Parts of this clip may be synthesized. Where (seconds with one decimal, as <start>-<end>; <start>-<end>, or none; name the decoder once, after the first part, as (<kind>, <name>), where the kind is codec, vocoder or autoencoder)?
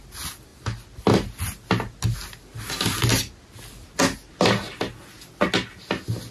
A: none